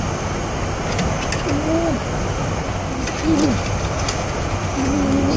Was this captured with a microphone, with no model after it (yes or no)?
yes